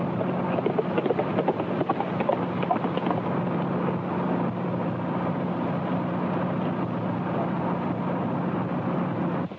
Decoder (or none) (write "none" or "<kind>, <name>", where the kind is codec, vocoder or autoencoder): none